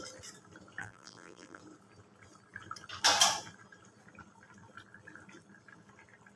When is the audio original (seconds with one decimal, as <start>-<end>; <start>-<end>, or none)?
0.0-0.8; 1.6-6.4